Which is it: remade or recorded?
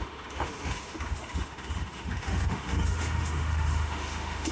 remade